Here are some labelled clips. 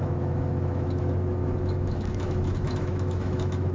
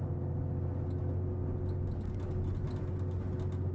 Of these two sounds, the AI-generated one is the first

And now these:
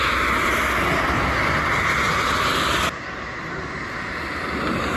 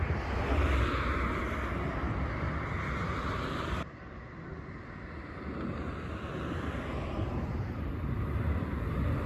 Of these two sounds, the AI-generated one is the second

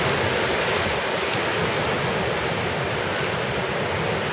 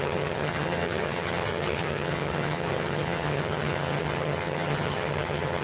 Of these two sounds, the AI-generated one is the second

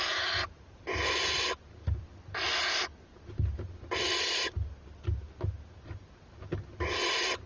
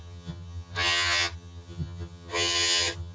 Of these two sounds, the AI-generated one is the second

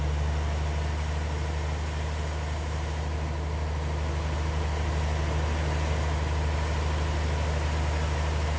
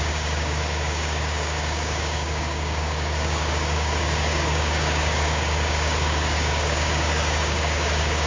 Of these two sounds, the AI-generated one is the second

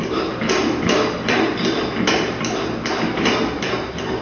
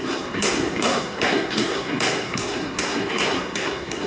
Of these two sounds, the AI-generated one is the second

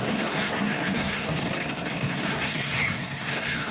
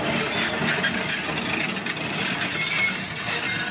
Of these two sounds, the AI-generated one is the first